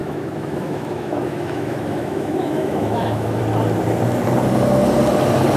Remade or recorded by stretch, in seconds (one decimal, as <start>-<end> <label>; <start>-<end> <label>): 0.0-3.4 remade; 3.4-5.6 recorded